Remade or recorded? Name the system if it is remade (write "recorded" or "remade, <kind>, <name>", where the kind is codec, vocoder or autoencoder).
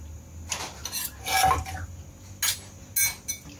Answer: recorded